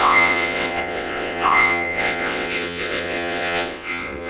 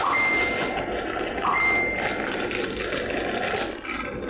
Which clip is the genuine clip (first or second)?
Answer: second